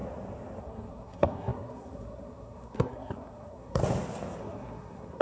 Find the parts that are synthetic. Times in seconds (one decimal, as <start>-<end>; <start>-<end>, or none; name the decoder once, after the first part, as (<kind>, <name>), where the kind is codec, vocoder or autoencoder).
0.6-3.8 (codec, SNAC); 4.4-5.2